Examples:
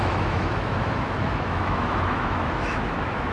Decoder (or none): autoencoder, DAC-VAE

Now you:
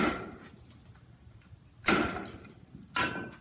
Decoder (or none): none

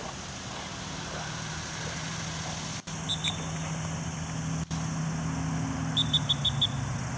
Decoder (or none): none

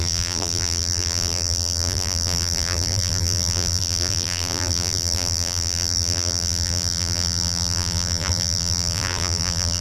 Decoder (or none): vocoder, BigVGAN v2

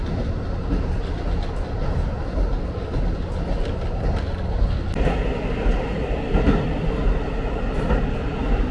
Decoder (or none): none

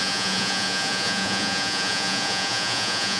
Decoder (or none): vocoder, Vocos